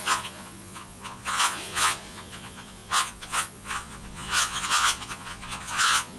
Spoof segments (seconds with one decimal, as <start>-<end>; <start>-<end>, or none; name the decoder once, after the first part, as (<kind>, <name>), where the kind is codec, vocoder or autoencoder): 0.0-6.2 (vocoder, Vocos)